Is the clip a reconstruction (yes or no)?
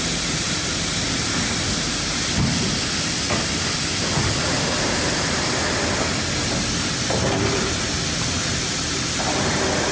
no